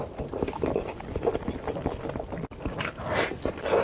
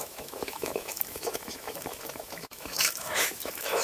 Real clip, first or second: first